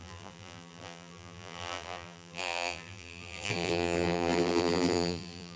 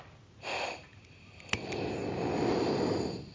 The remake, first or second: first